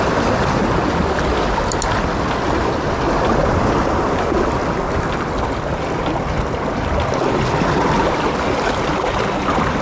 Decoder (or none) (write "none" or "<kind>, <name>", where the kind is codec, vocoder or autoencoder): none